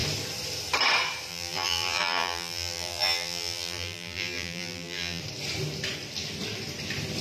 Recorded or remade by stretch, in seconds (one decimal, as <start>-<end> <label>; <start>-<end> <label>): 0.0-1.3 recorded; 1.3-5.2 remade; 5.2-7.2 recorded